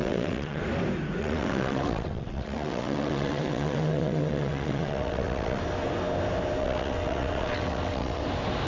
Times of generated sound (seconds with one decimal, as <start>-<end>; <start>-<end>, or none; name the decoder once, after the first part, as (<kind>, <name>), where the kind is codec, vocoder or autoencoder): 0.0-0.6 (vocoder, WaveNeXt); 1.2-5.6; 6.6-8.2